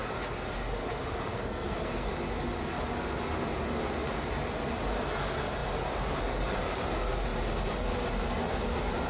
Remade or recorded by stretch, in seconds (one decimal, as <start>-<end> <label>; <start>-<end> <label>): 0.0-1.3 recorded; 1.3-2.1 remade; 2.1-9.1 recorded